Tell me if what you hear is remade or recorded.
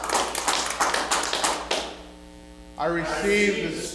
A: recorded